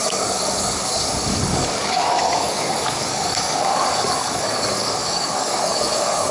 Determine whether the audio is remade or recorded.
remade